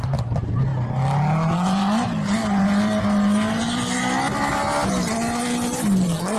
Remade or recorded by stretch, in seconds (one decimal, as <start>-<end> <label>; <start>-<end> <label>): 0.0-6.4 recorded